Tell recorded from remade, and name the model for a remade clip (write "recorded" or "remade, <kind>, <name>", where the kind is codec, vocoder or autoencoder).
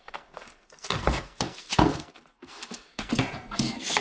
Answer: remade, codec, SNAC